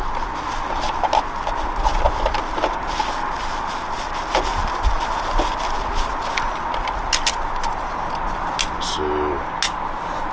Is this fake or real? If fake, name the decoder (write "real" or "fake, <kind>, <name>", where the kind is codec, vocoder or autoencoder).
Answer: real